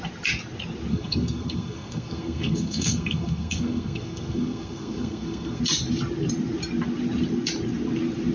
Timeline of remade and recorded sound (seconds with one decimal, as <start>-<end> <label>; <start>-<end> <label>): 0.0-0.9 recorded; 0.9-5.6 remade; 5.6-8.3 recorded